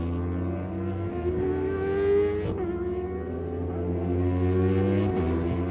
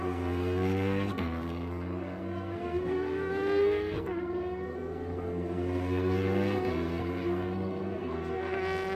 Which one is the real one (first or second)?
first